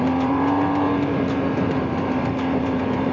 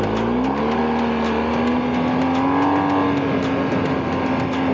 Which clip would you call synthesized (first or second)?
first